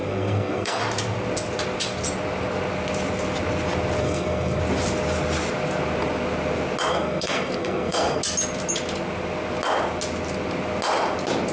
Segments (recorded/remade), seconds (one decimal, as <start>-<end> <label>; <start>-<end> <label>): 0.0-0.8 remade; 0.8-4.0 recorded; 4.0-4.6 remade; 4.6-6.9 recorded; 6.9-8.2 remade; 8.2-11.5 recorded